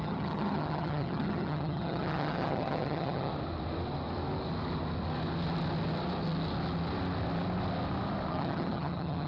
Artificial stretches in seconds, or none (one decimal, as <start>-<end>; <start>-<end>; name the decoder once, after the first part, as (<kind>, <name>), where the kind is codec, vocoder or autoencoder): 0.0-3.3 (vocoder, HiFi-GAN); 8.3-9.3